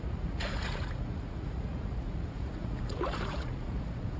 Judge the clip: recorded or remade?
remade